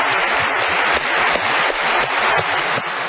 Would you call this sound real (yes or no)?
yes